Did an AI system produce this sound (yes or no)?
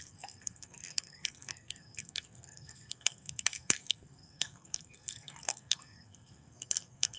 yes